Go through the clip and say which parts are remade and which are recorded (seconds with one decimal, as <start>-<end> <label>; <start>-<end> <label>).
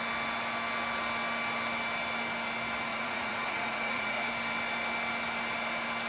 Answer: 0.0-2.9 recorded; 2.9-4.3 remade; 4.3-6.1 recorded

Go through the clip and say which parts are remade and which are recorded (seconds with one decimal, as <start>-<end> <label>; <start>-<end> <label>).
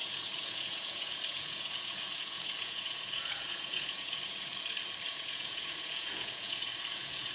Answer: 0.0-4.5 remade; 4.5-5.1 recorded; 5.1-7.3 remade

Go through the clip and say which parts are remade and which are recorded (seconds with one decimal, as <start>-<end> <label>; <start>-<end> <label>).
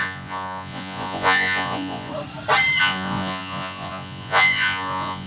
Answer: 0.0-2.1 remade; 2.1-2.8 recorded; 2.8-5.3 remade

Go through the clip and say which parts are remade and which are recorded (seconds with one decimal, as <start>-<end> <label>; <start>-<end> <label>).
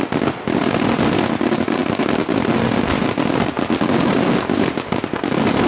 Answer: 0.0-5.7 recorded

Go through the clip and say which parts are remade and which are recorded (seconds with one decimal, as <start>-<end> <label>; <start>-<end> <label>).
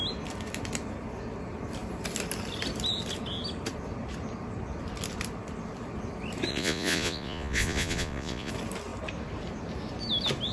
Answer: 0.0-6.5 recorded; 6.5-8.5 remade; 8.5-10.5 recorded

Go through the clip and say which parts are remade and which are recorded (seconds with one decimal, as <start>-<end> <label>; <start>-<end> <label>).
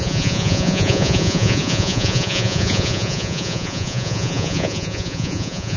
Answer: 0.0-5.8 remade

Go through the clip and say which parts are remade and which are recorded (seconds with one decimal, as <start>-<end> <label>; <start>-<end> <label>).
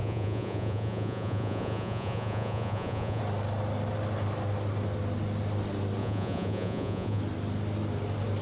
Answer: 0.0-3.2 remade; 3.2-6.0 recorded; 6.0-7.2 remade; 7.2-8.4 recorded